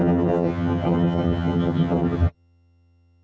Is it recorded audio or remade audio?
remade